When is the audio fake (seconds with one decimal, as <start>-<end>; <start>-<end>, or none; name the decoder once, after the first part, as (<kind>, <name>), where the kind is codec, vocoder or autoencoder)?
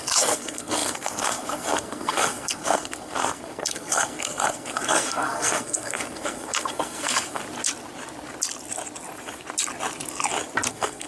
0.0-7.4 (codec, SNAC); 10.7-11.1